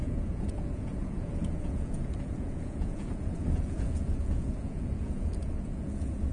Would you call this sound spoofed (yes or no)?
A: yes